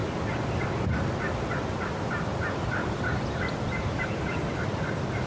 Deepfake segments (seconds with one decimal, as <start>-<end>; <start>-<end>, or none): 3.2-5.3